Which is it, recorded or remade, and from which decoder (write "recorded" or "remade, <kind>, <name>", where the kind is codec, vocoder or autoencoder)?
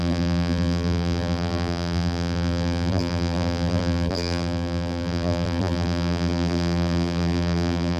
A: remade, vocoder, BigVGAN v2